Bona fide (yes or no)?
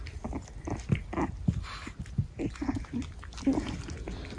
yes